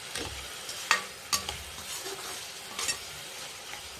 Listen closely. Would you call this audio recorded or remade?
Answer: recorded